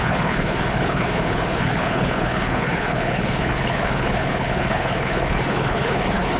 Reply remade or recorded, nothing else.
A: remade